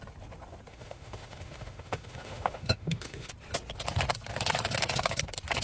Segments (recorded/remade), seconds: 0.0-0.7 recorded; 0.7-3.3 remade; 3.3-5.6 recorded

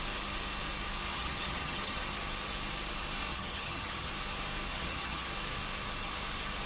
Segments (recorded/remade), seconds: 0.0-1.1 recorded; 1.1-2.0 remade; 2.0-3.3 recorded; 3.3-4.1 remade; 4.1-4.7 recorded; 4.7-5.3 remade; 5.3-6.7 recorded

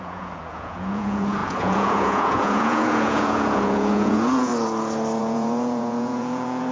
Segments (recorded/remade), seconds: 0.0-4.5 remade; 4.5-5.2 recorded; 5.2-6.7 remade

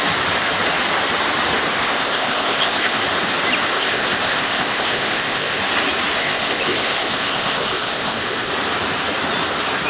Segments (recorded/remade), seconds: 0.0-1.8 recorded; 1.8-3.0 remade; 3.0-3.7 recorded; 3.7-5.6 remade; 5.6-6.2 recorded; 6.2-8.5 remade; 8.5-9.9 recorded

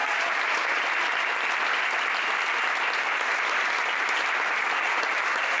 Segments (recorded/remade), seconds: 0.0-0.8 remade; 0.8-5.6 recorded

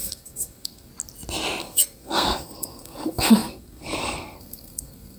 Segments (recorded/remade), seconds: 0.0-0.9 remade; 0.9-1.6 recorded; 1.6-5.2 remade